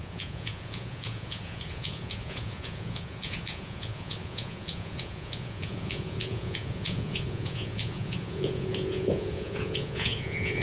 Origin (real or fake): fake